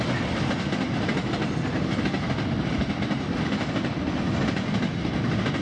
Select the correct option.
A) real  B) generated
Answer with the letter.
A